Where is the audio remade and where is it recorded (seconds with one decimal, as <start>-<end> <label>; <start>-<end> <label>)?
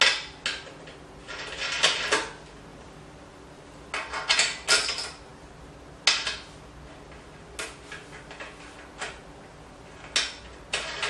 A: 0.0-2.7 recorded; 2.7-3.4 remade; 3.4-11.1 recorded